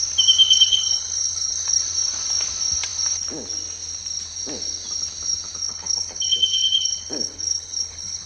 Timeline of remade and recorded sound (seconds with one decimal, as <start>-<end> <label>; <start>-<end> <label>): 0.0-0.4 recorded; 0.4-1.8 remade; 1.8-5.6 recorded; 5.6-8.3 remade